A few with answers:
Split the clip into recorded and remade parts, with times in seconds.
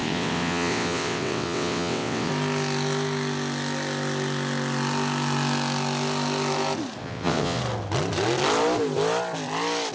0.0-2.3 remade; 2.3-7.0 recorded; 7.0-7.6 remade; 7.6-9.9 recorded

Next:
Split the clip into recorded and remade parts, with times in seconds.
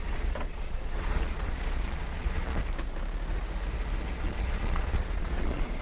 0.0-2.6 remade; 2.6-4.2 recorded; 4.2-5.8 remade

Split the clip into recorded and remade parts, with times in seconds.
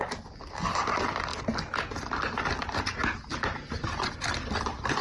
0.0-1.3 remade; 1.3-4.0 recorded; 4.0-5.0 remade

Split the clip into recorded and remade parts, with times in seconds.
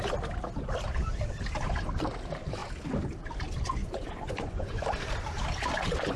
0.0-3.8 recorded; 3.8-4.8 remade; 4.8-6.2 recorded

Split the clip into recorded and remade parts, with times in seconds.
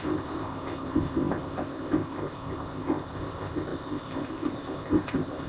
0.0-5.5 remade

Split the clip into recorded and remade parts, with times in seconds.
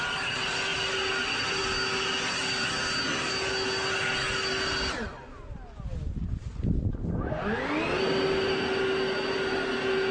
0.0-10.1 recorded